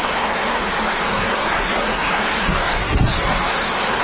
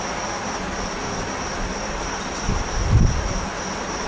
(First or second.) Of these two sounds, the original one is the second